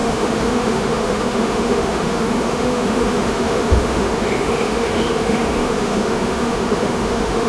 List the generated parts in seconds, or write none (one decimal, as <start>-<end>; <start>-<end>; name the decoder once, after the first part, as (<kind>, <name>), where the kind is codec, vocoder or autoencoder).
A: 0.0-7.5 (autoencoder, DAC-VAE)